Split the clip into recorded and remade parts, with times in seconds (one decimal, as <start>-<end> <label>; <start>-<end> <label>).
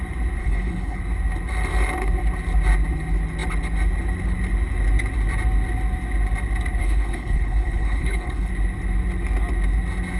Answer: 0.0-0.4 recorded; 0.4-1.0 remade; 1.0-6.8 recorded; 6.8-8.5 remade; 8.5-10.2 recorded